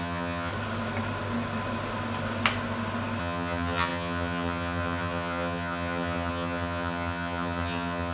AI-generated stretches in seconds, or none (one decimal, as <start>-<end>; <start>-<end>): 0.0-0.5; 3.2-8.1